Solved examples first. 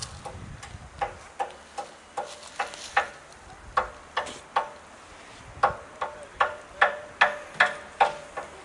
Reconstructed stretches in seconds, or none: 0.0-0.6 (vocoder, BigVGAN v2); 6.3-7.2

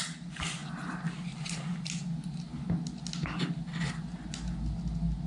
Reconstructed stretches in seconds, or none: none

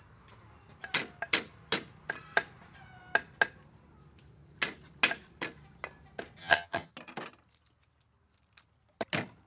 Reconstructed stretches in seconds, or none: 6.4-6.9 (vocoder, HiFi-GAN)